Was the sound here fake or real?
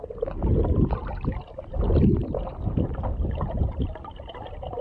real